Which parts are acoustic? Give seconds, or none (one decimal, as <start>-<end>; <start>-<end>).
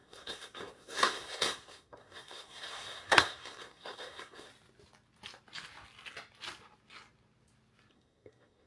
4.5-7.9